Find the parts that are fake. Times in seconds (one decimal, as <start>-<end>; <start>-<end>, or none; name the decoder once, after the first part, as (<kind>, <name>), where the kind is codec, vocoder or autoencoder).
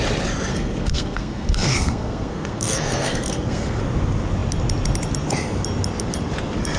0.5-3.8 (codec, SNAC)